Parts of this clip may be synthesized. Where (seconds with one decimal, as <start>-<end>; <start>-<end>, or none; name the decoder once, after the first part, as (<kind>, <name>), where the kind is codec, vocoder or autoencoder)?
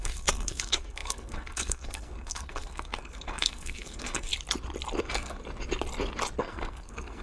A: 0.0-4.3 (codec, SNAC); 5.0-5.4; 6.4-7.2